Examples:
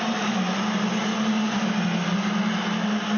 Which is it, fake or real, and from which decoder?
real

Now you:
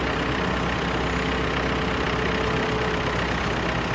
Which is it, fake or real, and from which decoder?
real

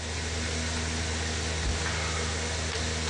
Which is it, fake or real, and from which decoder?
real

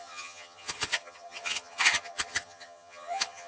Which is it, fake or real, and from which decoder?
fake, vocoder, HiFi-GAN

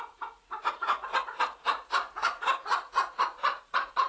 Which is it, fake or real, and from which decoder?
fake, vocoder, Vocos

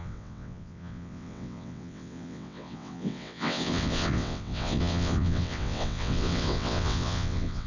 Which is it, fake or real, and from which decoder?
fake, vocoder, WaveNeXt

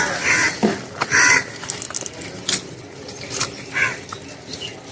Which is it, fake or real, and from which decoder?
real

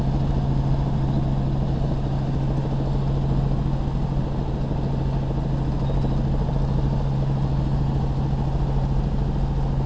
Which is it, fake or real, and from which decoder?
real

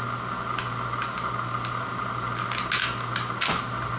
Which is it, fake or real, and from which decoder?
real